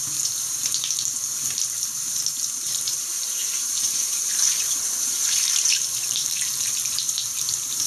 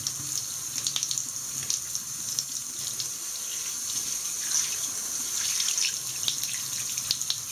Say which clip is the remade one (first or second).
first